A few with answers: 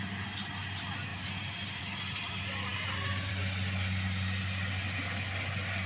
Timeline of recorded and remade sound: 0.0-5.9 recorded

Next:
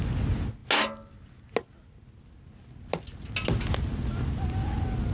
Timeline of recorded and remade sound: 0.0-5.1 recorded